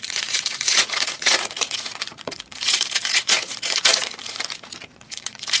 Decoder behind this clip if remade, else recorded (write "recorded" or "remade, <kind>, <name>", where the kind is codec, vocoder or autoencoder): remade, vocoder, Vocos